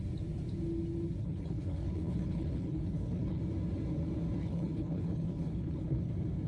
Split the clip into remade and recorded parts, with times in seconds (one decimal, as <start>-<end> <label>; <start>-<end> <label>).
0.0-1.2 recorded; 1.2-3.4 remade; 3.4-4.4 recorded; 4.4-6.1 remade; 6.1-6.5 recorded